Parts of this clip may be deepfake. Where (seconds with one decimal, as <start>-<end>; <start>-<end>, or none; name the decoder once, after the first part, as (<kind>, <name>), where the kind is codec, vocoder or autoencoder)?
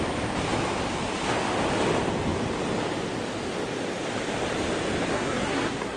5.1-6.0 (codec, SNAC)